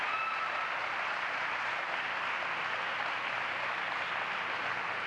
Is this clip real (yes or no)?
yes